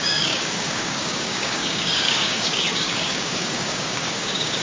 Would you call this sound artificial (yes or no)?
yes